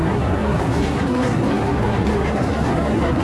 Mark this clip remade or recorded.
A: remade